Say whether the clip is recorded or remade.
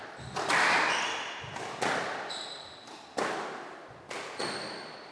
recorded